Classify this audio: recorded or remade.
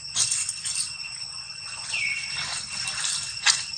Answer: recorded